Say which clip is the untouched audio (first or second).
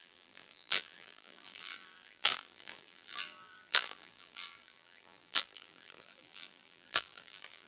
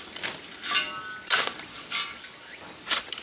second